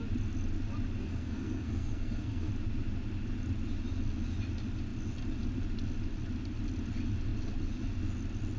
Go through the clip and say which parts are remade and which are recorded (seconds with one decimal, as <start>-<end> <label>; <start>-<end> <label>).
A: 0.0-1.0 recorded; 1.0-2.5 remade; 2.5-8.6 recorded